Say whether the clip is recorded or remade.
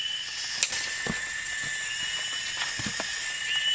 recorded